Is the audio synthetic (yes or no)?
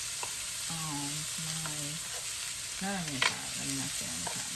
no